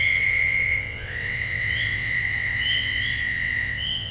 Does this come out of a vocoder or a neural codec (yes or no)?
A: yes